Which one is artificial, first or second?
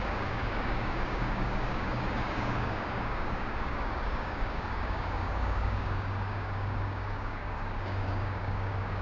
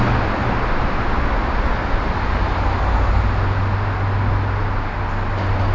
first